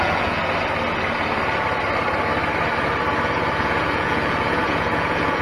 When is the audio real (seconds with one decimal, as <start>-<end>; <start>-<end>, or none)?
0.4-3.6